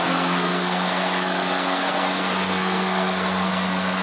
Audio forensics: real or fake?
fake